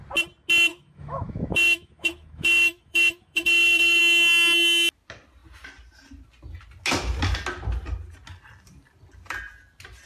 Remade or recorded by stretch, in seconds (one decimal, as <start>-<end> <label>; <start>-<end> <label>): 0.0-0.7 recorded; 0.7-4.0 remade; 4.0-10.1 recorded